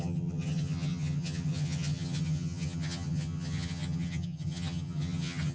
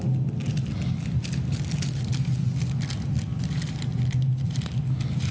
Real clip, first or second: second